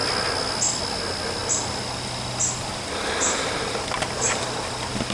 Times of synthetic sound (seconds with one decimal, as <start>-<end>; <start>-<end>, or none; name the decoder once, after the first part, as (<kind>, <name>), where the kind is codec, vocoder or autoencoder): none